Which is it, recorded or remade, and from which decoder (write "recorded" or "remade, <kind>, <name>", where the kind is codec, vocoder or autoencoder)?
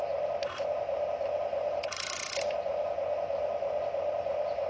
recorded